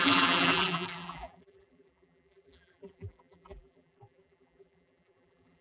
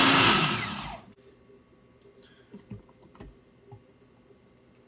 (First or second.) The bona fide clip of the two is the second